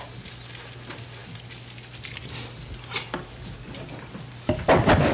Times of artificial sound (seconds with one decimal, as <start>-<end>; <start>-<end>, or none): none